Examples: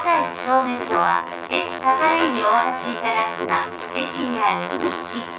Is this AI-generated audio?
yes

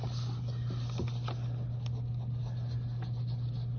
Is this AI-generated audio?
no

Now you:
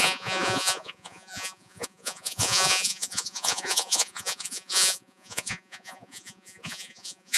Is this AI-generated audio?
yes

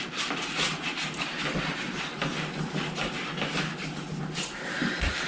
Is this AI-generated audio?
no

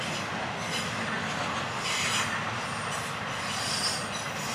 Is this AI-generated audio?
no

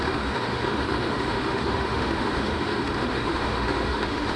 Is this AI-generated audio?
yes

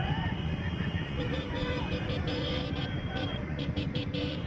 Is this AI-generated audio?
yes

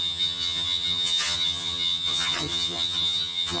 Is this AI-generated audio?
yes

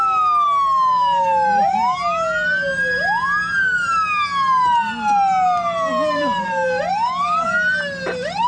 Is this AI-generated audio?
no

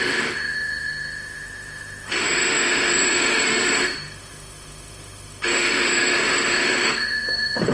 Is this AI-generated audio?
yes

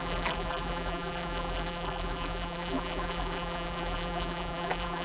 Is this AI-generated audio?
yes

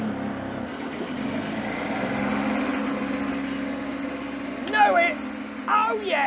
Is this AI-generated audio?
no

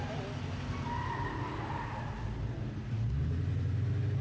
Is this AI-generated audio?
no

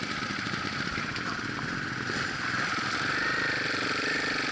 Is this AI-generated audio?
yes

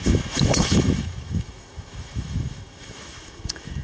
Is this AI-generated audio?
yes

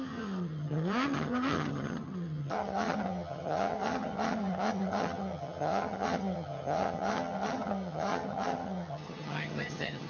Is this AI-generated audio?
yes